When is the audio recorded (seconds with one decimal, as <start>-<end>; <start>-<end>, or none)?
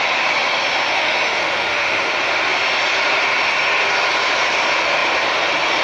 0.0-0.9; 2.1-5.8